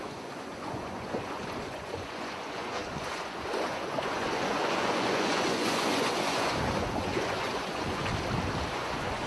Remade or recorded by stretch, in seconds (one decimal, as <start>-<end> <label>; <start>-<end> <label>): 0.0-8.1 remade; 8.1-8.7 recorded; 8.7-9.3 remade